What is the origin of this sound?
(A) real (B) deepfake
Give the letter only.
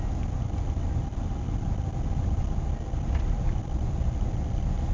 A